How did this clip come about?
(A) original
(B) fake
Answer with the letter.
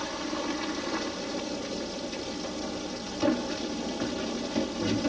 A